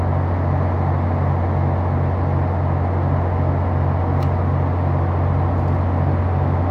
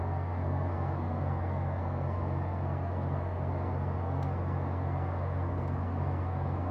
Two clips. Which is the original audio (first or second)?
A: first